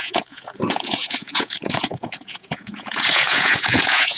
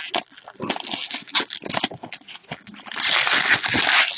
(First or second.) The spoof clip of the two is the first